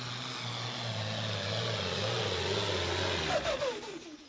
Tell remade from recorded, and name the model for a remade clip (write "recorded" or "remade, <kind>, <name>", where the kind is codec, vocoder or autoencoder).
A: recorded